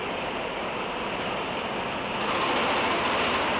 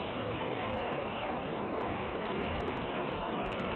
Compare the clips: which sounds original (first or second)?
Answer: first